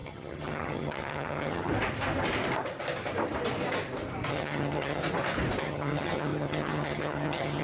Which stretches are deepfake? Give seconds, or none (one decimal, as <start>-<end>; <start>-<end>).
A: 0.0-1.7; 4.3-5.0; 5.6-7.6